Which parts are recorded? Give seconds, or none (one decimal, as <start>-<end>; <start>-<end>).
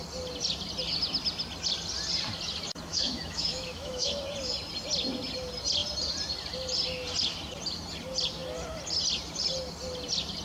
0.0-2.9; 4.1-10.4